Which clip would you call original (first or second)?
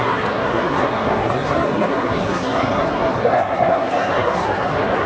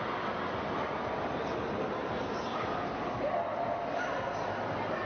second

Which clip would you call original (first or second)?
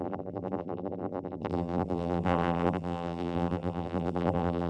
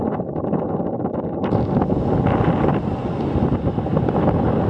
second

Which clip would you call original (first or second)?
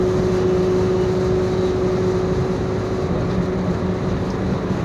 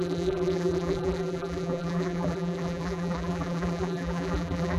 first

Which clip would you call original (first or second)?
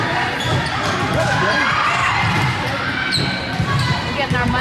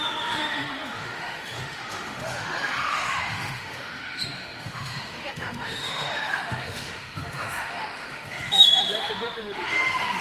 first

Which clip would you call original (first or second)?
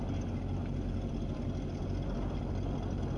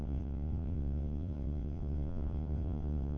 first